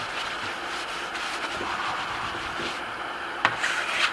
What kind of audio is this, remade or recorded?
remade